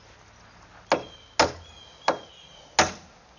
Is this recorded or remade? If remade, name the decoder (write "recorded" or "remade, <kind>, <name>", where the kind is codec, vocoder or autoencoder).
recorded